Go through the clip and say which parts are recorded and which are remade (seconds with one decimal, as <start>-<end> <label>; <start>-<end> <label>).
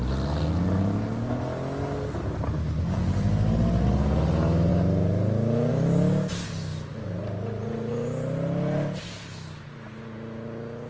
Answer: 0.0-10.9 recorded